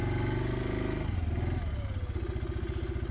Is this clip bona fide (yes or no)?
yes